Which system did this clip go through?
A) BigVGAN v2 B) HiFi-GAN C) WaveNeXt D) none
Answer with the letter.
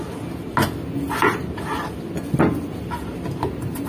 D